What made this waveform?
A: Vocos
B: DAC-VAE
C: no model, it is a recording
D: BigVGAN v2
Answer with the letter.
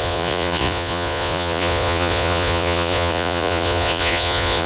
A